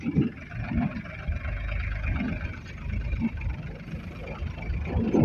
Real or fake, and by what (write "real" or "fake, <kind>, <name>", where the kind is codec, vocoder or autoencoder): real